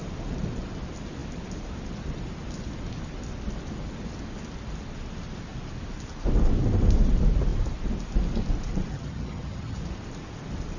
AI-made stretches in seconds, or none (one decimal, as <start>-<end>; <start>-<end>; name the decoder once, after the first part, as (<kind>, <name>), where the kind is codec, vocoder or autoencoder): 8.9-9.8 (vocoder, HiFi-GAN)

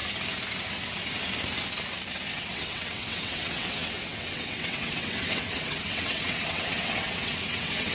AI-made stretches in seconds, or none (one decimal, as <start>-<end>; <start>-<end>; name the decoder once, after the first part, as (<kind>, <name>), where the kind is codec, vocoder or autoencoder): 2.3-7.9 (vocoder, WaveNeXt)

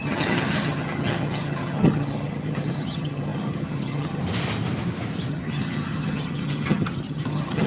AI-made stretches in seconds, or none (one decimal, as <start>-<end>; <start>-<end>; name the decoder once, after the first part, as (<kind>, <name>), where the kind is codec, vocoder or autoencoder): 0.0-4.2 (vocoder, HiFi-GAN); 5.3-7.7

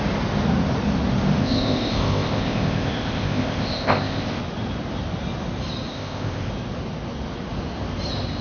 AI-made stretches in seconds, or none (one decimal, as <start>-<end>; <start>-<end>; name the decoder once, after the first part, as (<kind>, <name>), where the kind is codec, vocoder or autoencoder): 1.4-4.4 (codec, ZipCodec); 5.9-6.5